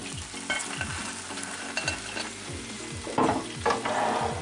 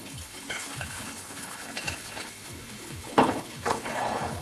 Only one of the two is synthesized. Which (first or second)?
second